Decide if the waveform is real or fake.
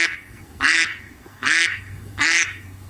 fake